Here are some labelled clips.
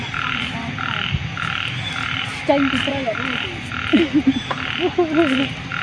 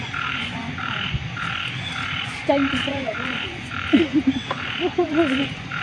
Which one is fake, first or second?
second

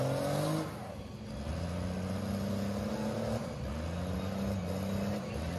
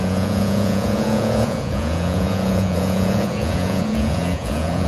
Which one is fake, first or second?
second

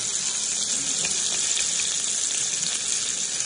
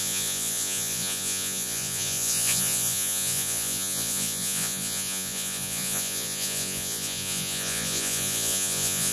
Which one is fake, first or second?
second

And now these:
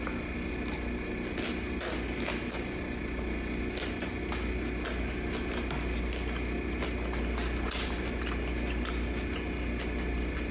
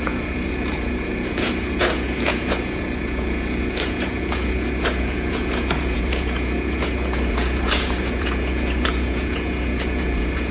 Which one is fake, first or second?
second